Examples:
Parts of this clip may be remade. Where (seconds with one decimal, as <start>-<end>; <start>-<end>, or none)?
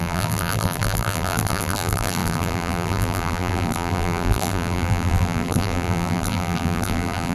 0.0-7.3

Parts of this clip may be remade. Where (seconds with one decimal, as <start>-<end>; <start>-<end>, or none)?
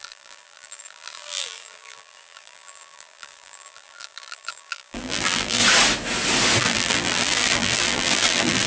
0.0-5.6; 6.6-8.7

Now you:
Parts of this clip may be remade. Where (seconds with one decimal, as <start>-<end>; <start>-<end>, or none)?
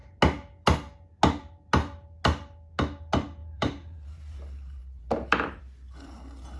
3.4-5.6